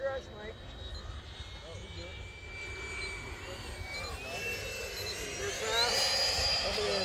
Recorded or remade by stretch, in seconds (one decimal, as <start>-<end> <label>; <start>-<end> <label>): 0.0-7.0 recorded